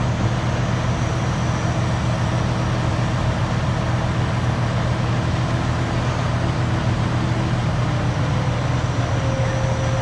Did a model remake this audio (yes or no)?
no